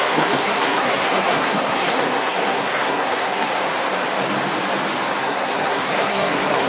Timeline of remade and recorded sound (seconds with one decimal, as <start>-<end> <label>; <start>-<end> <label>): 0.0-3.5 remade; 3.5-5.2 recorded; 5.2-6.7 remade